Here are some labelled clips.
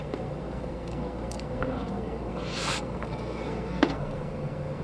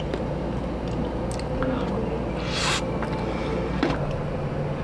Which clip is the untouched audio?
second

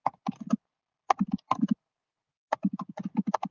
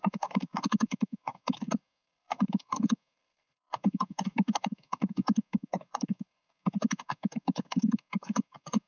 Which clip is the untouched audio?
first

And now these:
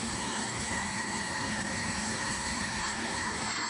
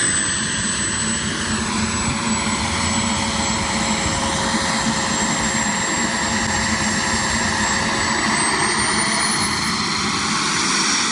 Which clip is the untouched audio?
second